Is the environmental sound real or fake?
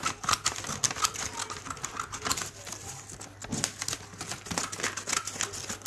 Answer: real